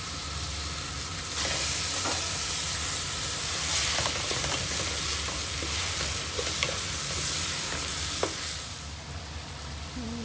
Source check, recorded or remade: recorded